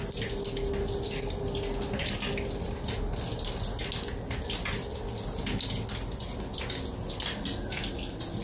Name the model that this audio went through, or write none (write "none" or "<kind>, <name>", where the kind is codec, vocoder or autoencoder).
none